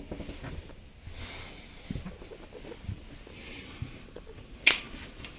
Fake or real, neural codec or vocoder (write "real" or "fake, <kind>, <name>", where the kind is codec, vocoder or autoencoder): real